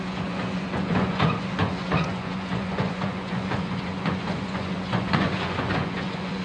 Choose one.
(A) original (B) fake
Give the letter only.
B